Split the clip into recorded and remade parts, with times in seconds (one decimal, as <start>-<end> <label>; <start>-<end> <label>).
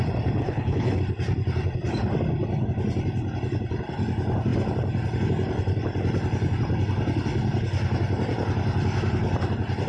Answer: 0.0-0.4 recorded; 0.4-1.0 remade; 1.0-9.9 recorded